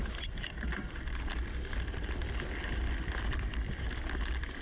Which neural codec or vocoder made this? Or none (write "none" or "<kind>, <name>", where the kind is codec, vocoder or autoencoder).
none